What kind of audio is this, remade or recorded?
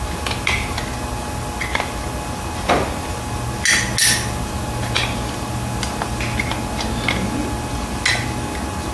recorded